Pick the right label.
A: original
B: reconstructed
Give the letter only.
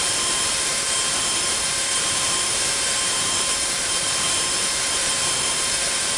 B